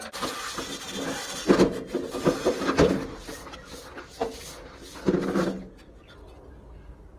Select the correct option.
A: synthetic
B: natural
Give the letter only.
B